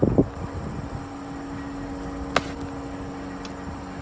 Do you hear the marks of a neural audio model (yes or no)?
no